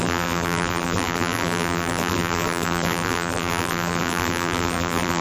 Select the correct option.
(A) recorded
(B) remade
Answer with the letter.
B